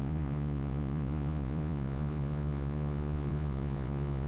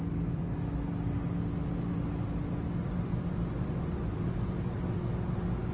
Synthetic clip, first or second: first